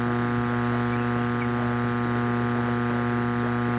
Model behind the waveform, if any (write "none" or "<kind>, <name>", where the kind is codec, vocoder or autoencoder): none